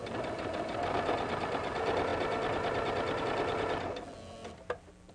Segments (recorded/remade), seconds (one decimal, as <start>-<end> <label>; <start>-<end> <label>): 0.0-5.1 recorded